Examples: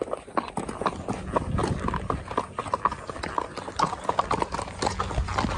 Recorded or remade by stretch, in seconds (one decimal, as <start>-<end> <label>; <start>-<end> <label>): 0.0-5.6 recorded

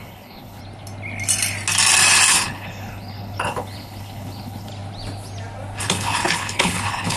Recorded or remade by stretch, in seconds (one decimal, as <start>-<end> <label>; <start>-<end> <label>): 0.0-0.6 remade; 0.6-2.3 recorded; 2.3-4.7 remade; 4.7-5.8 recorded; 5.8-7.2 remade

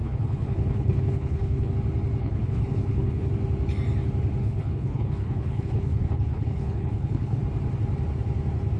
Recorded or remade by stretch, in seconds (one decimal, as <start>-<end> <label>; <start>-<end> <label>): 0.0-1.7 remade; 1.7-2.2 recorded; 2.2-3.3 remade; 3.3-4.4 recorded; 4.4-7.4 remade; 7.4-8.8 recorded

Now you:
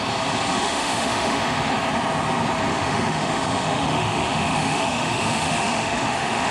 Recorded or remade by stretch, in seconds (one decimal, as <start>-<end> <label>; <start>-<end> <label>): 0.0-0.5 recorded; 0.5-1.7 remade; 1.7-2.7 recorded; 2.7-6.5 remade

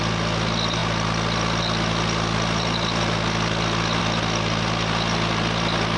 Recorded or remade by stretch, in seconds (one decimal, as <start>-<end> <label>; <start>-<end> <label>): 0.0-6.0 recorded